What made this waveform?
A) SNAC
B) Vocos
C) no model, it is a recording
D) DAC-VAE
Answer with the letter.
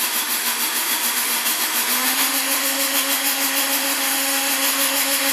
D